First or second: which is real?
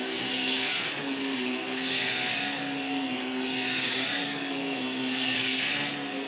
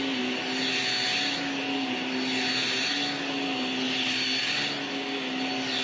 second